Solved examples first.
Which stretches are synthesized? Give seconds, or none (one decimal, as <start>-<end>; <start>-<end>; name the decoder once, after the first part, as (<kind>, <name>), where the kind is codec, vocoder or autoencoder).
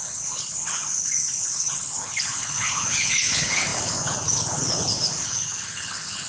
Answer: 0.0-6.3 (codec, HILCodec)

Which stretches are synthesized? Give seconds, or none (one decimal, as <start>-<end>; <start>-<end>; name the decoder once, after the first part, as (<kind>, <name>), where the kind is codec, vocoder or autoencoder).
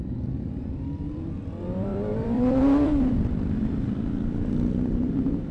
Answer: 0.0-5.5 (vocoder, BigVGAN v2)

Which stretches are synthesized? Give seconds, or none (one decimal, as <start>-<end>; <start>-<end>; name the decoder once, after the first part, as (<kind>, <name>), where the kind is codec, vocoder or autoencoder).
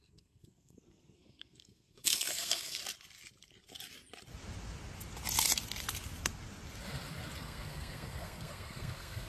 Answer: 0.0-2.8 (codec, SNAC); 7.4-9.3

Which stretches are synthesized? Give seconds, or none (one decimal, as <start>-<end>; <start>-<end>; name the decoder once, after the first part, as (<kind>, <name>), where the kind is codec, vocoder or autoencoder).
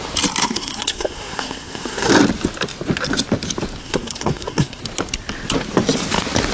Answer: 0.4-2.1 (codec, SNAC); 3.8-4.8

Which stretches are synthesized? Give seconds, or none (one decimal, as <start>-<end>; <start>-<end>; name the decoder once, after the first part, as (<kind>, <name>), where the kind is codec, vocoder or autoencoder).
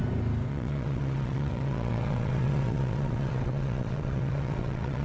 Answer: 0.5-5.0 (vocoder, WaveNeXt)